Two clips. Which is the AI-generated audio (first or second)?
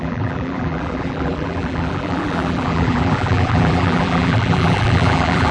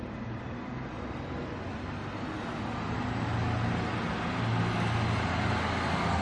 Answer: first